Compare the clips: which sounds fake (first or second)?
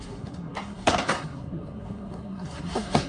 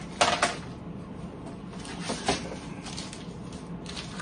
first